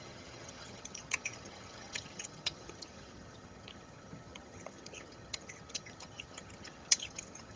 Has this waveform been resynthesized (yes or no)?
yes